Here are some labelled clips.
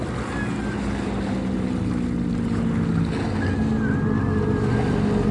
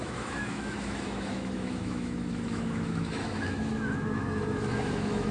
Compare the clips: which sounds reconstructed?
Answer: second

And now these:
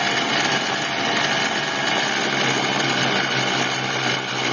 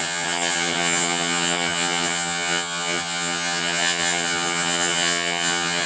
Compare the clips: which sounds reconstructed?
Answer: second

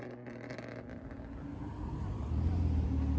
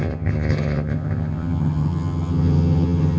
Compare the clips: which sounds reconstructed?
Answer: second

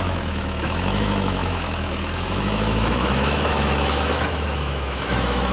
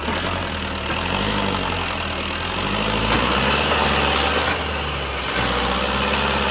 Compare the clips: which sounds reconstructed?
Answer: first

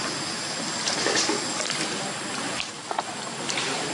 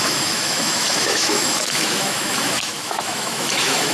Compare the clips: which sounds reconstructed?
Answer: second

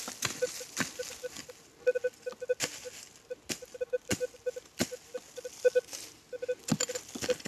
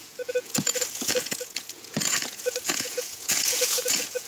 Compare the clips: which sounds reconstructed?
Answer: second